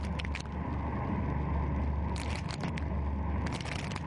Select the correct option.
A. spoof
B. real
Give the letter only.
B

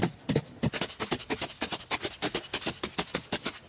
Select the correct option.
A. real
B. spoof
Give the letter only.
A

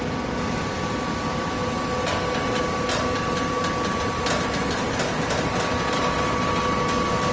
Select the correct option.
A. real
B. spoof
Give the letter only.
A